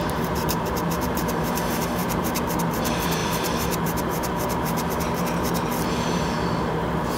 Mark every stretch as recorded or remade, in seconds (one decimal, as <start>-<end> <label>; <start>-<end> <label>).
0.0-7.2 remade